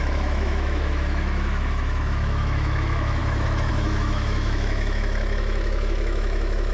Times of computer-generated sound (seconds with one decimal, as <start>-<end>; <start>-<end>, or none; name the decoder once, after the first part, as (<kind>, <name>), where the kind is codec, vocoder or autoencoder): 0.0-6.7 (autoencoder, DAC-VAE)